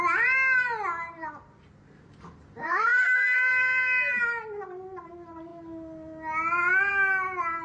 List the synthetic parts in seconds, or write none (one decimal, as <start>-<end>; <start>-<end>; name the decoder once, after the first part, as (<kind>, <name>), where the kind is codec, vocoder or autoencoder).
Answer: 2.6-3.5 (autoencoder, DAC-VAE)